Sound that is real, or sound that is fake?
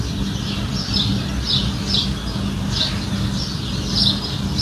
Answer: real